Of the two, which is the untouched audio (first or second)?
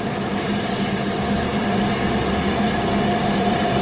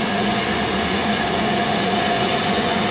first